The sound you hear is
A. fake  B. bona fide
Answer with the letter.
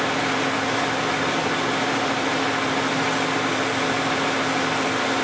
B